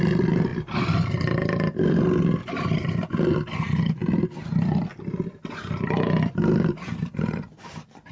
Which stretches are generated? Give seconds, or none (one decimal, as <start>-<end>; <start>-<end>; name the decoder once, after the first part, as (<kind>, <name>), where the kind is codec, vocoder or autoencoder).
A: 0.0-8.1 (vocoder, BigVGAN v2)